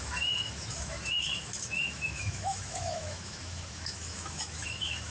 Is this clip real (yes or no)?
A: no